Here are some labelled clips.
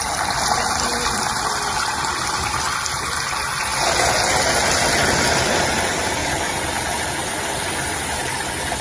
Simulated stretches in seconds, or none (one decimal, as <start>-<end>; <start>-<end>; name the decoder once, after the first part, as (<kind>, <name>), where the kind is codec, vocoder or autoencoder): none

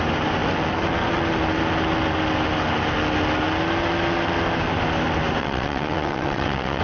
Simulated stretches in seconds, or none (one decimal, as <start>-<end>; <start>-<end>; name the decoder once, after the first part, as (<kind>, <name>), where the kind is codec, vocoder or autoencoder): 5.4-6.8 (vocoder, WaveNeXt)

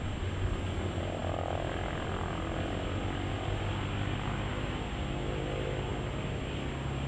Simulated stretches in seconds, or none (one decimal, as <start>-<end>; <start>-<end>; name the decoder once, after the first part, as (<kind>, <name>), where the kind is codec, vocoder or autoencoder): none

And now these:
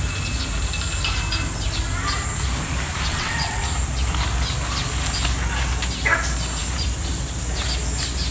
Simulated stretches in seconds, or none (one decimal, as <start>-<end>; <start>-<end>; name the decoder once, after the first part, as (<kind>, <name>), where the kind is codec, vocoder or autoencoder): 3.1-3.6 (vocoder, WaveNeXt)

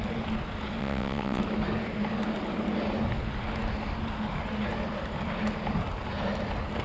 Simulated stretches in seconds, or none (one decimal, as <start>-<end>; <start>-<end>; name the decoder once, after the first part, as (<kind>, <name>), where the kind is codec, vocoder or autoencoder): 0.8-1.4 (vocoder, WaveNeXt)

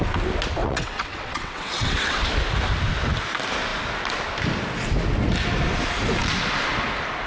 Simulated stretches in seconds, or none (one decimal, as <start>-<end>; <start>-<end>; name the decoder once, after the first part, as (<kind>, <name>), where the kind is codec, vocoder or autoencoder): 0.6-2.2 (vocoder, WaveNeXt)